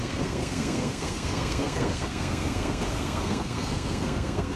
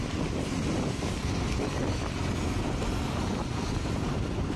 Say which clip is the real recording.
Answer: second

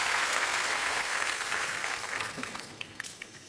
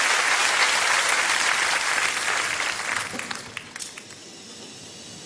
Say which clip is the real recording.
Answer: second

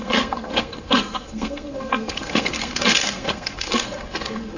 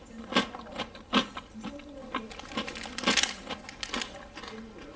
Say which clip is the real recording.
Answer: second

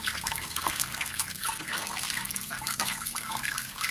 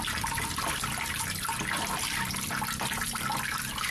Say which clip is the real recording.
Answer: second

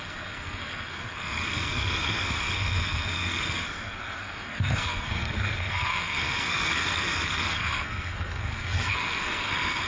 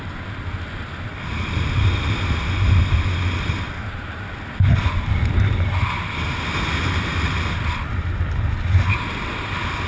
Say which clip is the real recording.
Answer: second